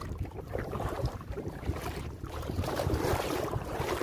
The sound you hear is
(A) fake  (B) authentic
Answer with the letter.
A